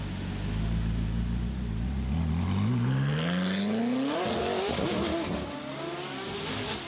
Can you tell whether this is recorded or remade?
recorded